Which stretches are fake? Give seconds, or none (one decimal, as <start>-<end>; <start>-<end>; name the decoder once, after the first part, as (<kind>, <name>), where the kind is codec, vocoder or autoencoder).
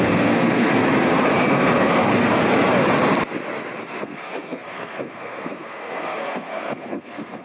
0.0-0.8 (codec, SNAC); 1.5-1.9; 4.0-7.4